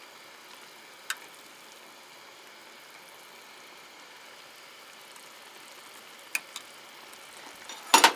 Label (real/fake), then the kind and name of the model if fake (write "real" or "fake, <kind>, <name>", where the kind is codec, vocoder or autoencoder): real